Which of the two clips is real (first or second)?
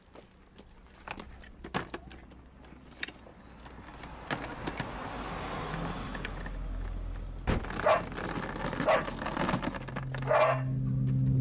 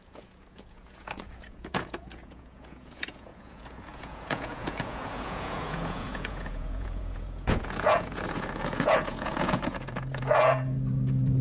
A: first